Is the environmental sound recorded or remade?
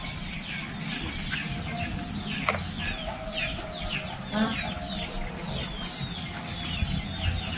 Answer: recorded